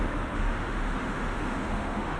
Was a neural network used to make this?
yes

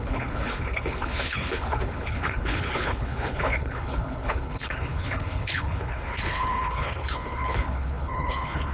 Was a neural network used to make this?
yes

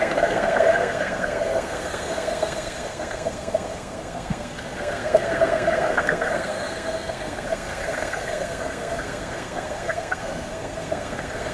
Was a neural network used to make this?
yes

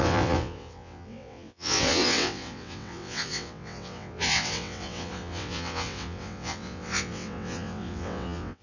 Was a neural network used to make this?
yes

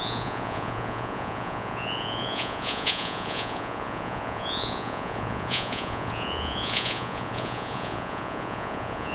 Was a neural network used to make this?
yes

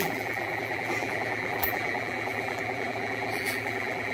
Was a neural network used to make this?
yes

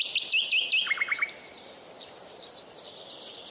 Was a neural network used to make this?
no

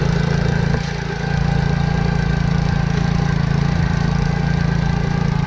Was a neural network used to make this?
no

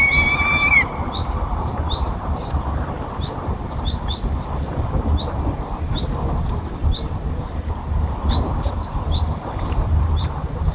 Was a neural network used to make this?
yes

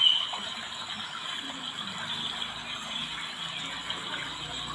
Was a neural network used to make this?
no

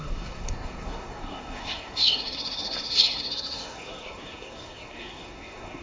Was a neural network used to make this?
yes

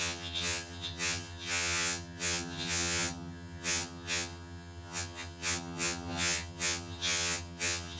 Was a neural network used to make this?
yes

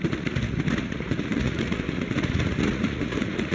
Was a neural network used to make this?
yes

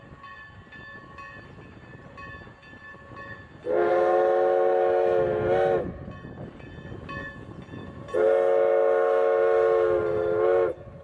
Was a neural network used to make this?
no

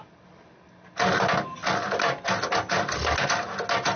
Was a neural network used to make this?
no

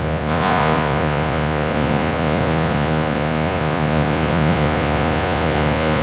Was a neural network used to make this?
yes